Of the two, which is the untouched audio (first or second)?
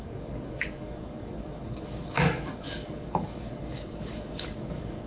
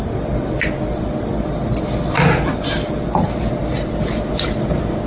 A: second